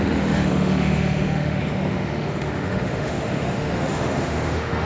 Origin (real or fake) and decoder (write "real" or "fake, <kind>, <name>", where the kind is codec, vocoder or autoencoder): fake, autoencoder, DAC-VAE